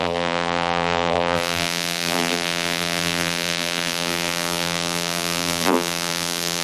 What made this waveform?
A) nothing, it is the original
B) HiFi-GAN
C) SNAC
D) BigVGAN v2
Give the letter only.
D